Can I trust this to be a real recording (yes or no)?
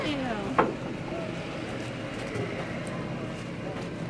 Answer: yes